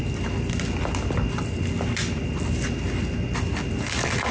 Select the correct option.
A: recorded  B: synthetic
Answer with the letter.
A